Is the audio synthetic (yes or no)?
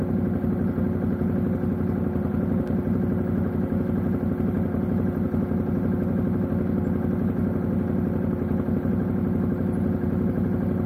no